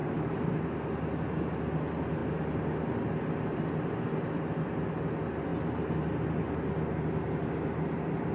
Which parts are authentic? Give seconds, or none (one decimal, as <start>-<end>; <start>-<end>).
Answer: 0.6-8.3